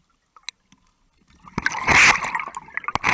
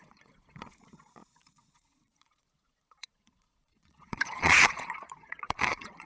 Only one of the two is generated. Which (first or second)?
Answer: second